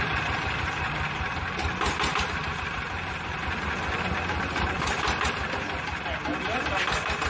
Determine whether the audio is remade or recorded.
recorded